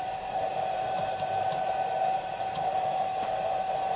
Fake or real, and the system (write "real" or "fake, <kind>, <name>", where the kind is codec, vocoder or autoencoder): fake, vocoder, BigVGAN v2